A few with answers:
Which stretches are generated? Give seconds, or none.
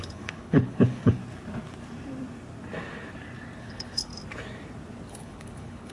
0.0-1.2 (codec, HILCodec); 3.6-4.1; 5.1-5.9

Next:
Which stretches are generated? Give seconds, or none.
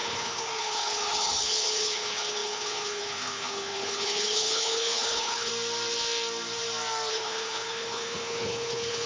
0.0-5.5 (codec, HILCodec); 7.1-9.1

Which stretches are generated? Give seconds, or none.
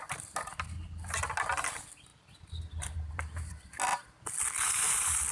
none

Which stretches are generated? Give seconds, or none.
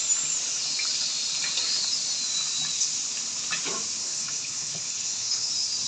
4.0-5.5 (codec, HILCodec)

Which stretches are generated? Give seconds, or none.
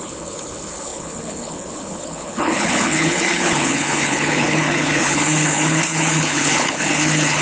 0.0-7.4 (codec, HILCodec)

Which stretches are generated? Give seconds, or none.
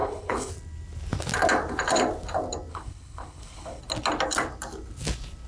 0.0-0.5 (codec, HILCodec); 2.7-3.8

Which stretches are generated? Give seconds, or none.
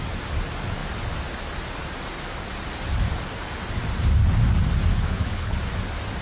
4.9-5.6 (codec, HILCodec)